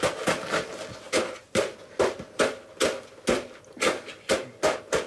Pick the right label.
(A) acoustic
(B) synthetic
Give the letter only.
A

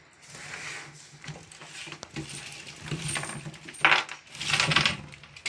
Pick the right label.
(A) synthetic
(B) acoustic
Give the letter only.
B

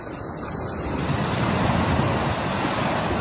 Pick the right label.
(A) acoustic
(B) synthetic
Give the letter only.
A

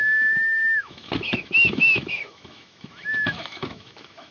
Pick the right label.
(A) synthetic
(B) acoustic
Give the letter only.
A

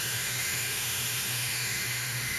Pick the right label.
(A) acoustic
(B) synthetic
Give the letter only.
B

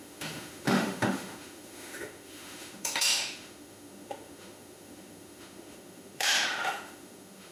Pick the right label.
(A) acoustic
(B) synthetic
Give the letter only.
B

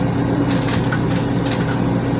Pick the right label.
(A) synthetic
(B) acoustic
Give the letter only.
B